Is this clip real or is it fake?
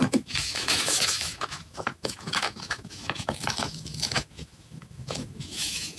fake